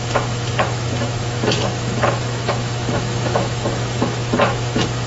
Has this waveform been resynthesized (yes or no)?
yes